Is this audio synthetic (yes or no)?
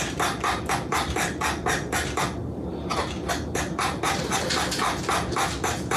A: no